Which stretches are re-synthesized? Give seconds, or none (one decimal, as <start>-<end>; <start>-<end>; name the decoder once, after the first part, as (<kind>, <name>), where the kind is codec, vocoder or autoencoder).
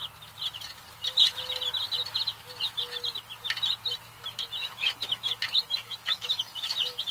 4.6-6.4 (autoencoder, DAC-VAE)